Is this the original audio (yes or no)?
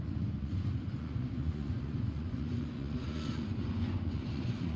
no